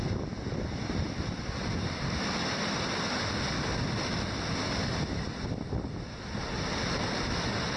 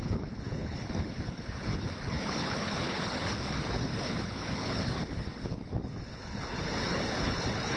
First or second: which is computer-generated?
second